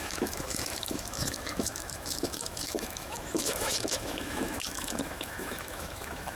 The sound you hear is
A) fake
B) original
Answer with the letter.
A